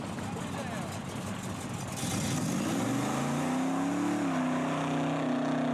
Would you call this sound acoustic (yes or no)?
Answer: yes